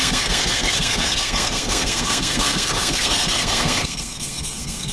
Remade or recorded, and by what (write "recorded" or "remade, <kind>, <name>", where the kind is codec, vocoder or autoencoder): remade, codec, SNAC